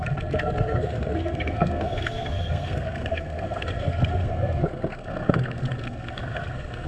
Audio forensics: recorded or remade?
remade